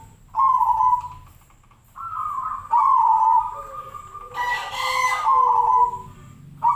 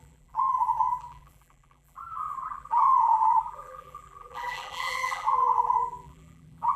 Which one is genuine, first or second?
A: first